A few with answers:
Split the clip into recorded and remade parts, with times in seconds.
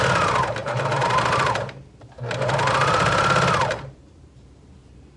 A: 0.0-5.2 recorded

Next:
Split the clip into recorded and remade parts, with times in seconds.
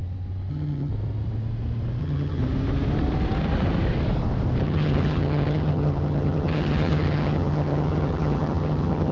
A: 0.0-0.5 recorded; 0.5-0.9 remade; 0.9-2.0 recorded; 2.0-2.4 remade; 2.4-4.6 recorded; 4.6-9.1 remade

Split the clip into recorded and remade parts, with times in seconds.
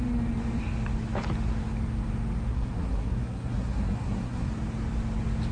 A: 0.0-2.5 recorded; 2.5-4.5 remade; 4.5-5.5 recorded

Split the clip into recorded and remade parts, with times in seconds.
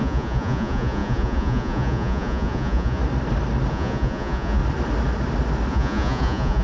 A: 0.0-3.0 remade; 3.0-3.7 recorded; 3.7-4.6 remade; 4.6-5.7 recorded; 5.7-6.6 remade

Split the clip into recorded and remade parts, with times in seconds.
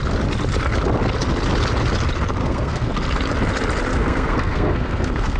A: 0.0-2.4 recorded; 2.4-2.9 remade; 2.9-3.9 recorded; 3.9-5.4 remade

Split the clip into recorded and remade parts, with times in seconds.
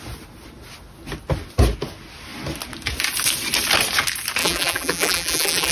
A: 0.0-4.4 recorded; 4.4-5.7 remade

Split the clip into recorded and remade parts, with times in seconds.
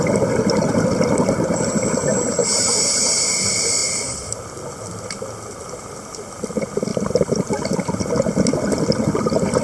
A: 0.0-2.4 recorded; 2.4-3.4 remade; 3.4-3.8 recorded; 3.8-4.4 remade; 4.4-6.9 recorded; 6.9-8.1 remade; 8.1-9.6 recorded